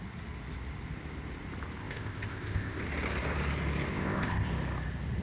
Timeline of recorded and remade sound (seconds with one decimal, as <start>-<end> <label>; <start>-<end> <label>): 0.0-1.8 recorded; 1.8-2.8 remade; 2.8-3.9 recorded; 3.9-4.5 remade; 4.5-5.2 recorded